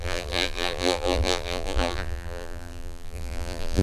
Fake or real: fake